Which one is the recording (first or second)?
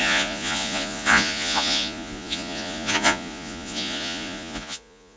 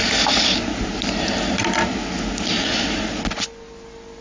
second